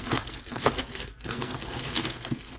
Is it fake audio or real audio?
fake